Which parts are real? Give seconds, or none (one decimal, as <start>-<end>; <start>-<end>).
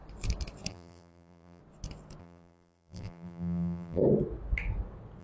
0.0-0.7; 1.6-2.2; 4.0-5.2